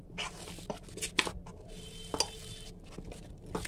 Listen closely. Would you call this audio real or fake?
real